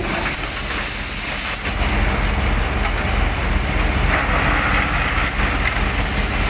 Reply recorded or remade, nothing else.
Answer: recorded